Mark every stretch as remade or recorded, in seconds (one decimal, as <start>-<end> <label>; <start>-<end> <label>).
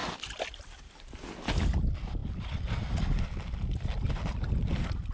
0.0-5.1 recorded